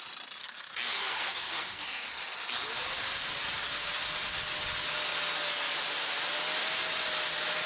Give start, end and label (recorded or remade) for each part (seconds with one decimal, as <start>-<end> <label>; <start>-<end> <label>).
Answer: 0.0-0.4 recorded; 0.4-2.2 remade; 2.2-7.7 recorded